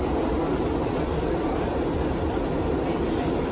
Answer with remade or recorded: recorded